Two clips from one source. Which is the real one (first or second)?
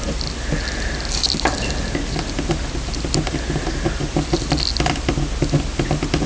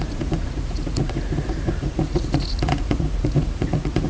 first